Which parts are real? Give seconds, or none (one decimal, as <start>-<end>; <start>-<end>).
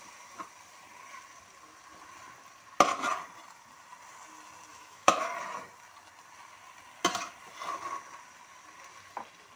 0.0-4.7; 5.3-9.6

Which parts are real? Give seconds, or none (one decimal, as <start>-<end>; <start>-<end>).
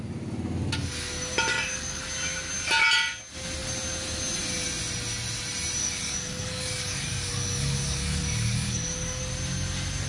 0.0-1.5; 2.0-5.8; 9.3-10.1